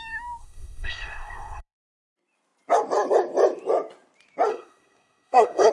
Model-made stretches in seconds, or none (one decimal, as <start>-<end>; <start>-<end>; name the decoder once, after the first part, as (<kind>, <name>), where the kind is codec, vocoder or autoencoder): 0.4-2.0 (codec, SNAC); 4.5-5.7